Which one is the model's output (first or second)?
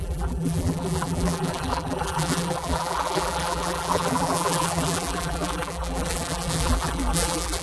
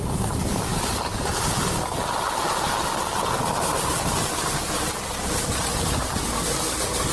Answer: first